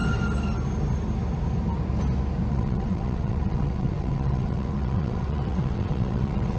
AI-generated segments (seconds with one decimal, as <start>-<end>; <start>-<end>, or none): 2.5-6.6